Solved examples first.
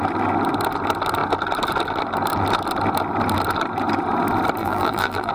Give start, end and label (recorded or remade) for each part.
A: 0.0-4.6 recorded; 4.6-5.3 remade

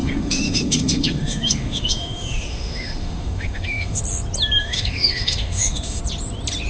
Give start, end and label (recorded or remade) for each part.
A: 0.0-4.0 remade; 4.0-4.6 recorded; 4.6-6.0 remade; 6.0-6.7 recorded

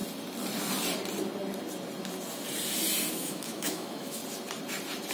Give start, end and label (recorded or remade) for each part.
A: 0.0-3.1 recorded; 3.1-4.2 remade; 4.2-5.1 recorded

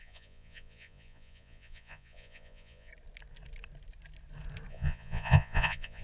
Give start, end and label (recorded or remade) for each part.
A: 0.0-2.9 remade; 2.9-4.7 recorded; 4.7-6.0 remade

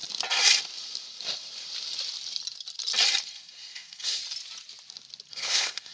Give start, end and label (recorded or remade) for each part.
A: 0.0-3.5 recorded; 3.5-4.2 remade; 4.2-5.3 recorded; 5.3-5.9 remade

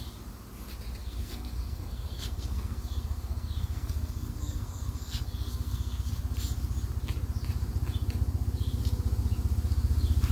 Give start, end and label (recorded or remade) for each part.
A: 0.0-1.0 recorded; 1.0-6.2 remade; 6.2-10.3 recorded

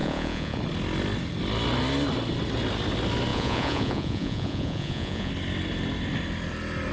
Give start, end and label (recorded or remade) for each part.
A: 0.0-0.6 remade; 0.6-3.3 recorded; 3.3-5.3 remade; 5.3-6.9 recorded

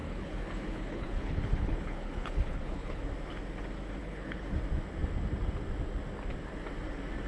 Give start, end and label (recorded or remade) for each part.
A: 0.0-3.0 remade; 3.0-4.0 recorded; 4.0-4.6 remade; 4.6-7.3 recorded